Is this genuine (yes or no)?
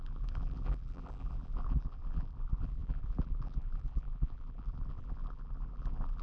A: no